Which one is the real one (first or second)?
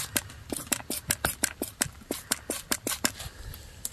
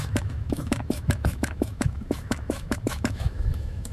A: first